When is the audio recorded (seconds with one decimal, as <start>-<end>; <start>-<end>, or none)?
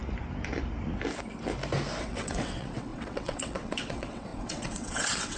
0.0-2.0